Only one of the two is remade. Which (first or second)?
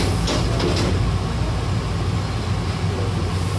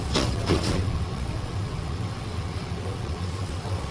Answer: second